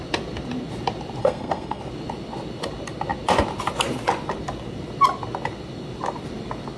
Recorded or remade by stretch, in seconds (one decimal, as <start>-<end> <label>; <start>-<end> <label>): 0.0-1.2 recorded; 1.2-1.8 remade; 1.8-6.8 recorded